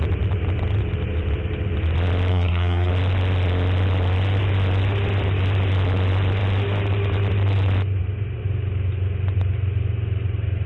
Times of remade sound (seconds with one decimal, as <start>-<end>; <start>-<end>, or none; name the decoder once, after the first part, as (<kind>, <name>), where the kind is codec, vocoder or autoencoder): 2.3-2.9 (codec, SNAC)